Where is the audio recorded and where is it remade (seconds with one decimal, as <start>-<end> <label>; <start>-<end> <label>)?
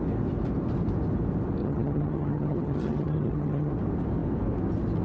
0.0-1.6 recorded; 1.6-3.7 remade; 3.7-5.0 recorded